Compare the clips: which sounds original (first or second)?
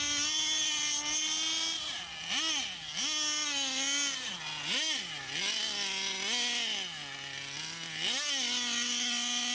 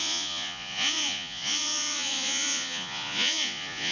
first